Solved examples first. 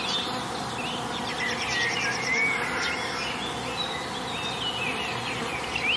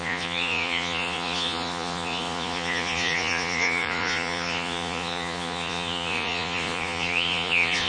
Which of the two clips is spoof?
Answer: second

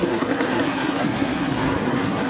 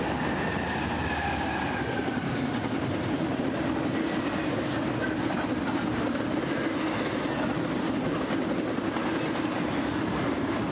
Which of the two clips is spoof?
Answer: first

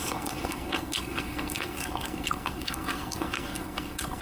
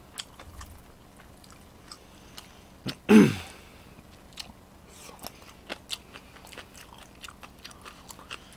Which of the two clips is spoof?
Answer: first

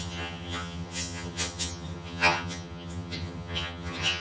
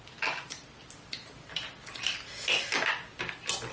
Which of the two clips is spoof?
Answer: first